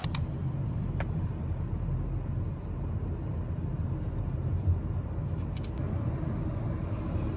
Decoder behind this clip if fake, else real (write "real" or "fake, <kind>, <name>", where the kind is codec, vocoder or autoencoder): real